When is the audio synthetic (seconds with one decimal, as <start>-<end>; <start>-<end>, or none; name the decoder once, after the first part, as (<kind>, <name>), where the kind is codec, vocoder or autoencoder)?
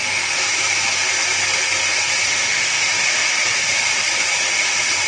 2.3-2.9 (autoencoder, DAC-VAE)